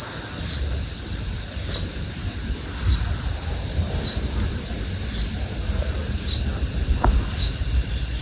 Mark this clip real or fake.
real